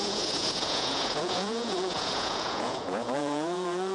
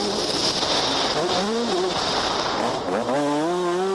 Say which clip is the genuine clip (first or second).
second